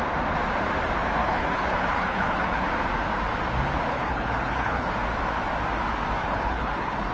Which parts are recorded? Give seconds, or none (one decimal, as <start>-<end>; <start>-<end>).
0.0-1.2; 2.7-3.9; 4.9-6.2

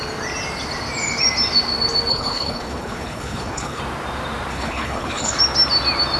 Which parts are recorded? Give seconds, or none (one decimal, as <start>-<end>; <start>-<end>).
0.0-2.1; 3.8-4.5; 5.4-6.2

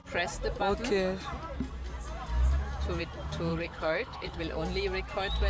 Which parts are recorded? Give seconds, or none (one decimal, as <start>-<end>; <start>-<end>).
0.0-3.5; 4.4-5.5

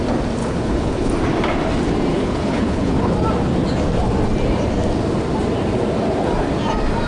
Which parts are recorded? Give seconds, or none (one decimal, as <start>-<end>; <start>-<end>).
0.0-0.4; 1.1-2.1; 3.1-7.1

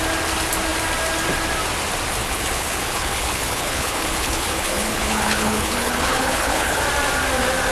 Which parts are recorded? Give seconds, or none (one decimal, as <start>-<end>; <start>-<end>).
0.0-2.2; 6.8-7.7

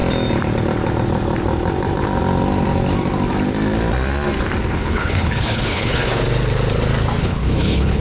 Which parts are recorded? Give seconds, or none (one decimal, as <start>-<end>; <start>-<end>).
0.0-4.7; 6.2-7.2